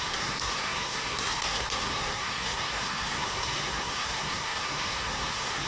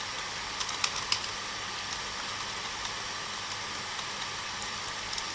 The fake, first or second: first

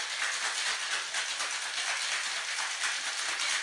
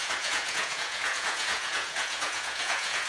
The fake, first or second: second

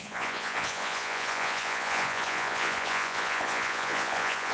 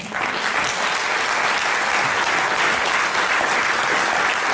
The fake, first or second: first